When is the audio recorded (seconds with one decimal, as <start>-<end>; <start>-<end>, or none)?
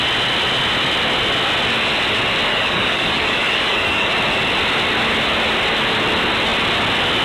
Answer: 0.0-2.5; 4.1-7.2